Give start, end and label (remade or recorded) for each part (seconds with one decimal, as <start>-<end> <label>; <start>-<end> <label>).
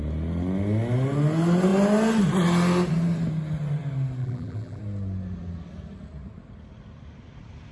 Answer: 0.0-4.2 recorded; 4.2-4.8 remade; 4.8-7.7 recorded